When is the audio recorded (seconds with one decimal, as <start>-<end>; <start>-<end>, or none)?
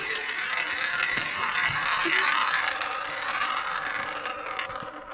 0.0-5.1